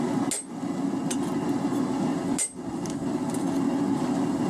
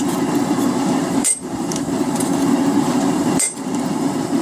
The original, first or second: first